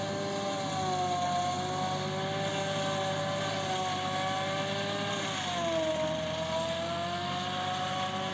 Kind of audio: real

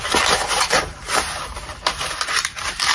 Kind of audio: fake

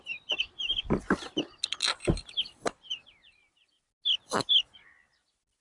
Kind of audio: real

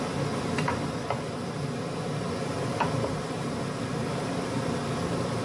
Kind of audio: fake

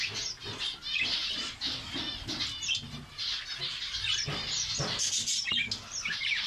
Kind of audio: real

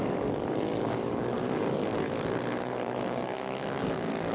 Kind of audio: fake